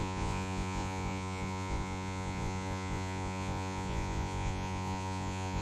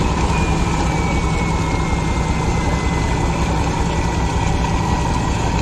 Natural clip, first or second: second